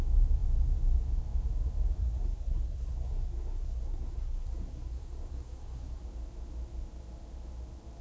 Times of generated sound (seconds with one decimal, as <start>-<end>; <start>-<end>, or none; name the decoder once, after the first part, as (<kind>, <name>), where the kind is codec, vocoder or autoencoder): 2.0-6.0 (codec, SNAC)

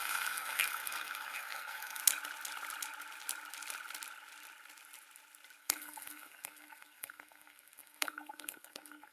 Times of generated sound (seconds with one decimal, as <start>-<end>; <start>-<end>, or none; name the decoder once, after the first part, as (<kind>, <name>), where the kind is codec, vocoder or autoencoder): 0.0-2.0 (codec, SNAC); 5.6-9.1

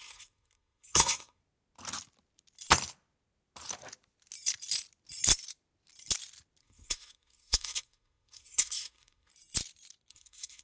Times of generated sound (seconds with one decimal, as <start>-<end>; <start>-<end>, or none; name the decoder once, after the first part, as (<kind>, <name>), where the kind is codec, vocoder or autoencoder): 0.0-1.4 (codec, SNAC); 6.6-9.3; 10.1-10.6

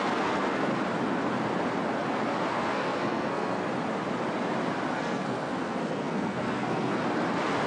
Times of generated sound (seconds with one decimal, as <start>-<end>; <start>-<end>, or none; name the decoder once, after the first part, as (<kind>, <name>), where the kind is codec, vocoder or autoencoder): 0.0-0.7 (codec, SNAC); 2.5-3.7; 4.9-7.0

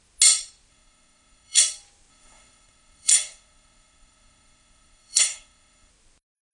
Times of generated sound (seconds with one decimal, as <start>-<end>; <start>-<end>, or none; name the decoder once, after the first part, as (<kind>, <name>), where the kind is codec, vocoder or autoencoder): 0.7-1.6 (codec, SNAC); 2.1-5.9

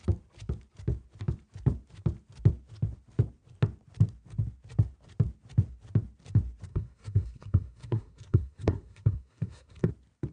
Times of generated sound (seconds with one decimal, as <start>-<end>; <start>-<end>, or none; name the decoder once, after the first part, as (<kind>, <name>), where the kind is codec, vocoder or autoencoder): 6.7-9.9 (codec, SNAC)